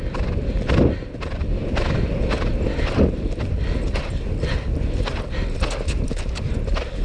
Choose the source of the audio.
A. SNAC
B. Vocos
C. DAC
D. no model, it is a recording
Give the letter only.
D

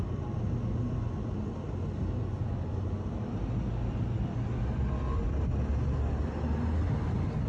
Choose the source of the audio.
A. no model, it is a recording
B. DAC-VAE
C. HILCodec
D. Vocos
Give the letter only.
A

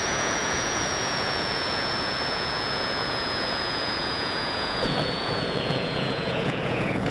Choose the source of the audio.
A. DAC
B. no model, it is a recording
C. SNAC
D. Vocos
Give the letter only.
D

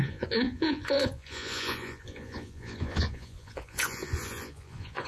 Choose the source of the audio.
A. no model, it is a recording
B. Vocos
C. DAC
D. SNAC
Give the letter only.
B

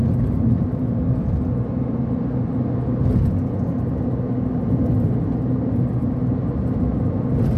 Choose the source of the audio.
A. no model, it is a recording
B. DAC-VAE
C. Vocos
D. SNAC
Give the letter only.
A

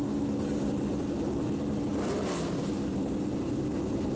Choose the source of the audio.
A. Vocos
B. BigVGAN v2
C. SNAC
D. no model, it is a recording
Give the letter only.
D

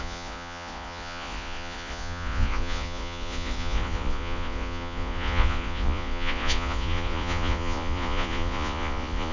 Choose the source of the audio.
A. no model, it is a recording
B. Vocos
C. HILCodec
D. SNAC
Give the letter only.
B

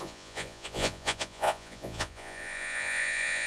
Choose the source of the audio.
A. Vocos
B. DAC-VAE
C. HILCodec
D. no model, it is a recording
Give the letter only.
A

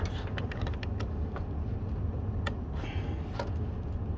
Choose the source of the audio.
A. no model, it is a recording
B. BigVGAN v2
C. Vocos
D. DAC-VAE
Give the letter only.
A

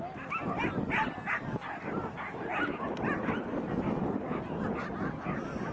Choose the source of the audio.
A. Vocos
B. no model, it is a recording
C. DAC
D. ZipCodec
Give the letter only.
B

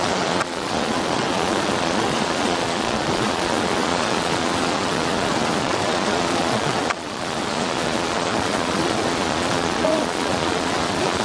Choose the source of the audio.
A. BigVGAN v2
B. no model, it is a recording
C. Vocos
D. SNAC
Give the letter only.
C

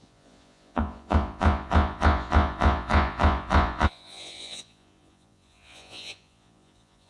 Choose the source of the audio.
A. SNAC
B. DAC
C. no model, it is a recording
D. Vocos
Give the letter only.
D